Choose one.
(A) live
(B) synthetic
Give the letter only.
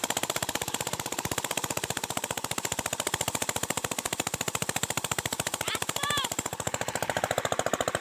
B